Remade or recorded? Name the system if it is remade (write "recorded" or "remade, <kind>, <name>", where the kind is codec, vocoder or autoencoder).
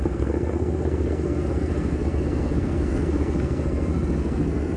remade, codec, SNAC